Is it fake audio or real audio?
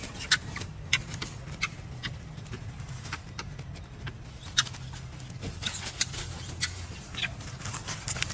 real